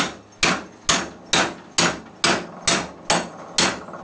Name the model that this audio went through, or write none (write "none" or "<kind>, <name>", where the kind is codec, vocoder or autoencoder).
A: none